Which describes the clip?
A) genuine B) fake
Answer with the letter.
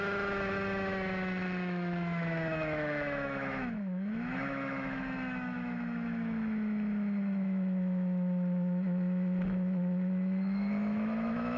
B